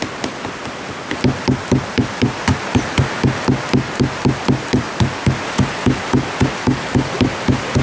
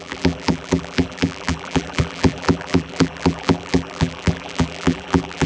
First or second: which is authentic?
first